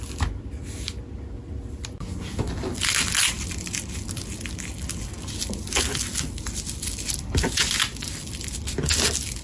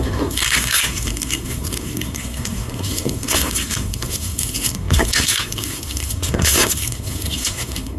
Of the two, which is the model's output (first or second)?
second